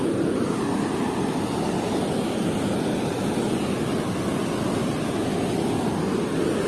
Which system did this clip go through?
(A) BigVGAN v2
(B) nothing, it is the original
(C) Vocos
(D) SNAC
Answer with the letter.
B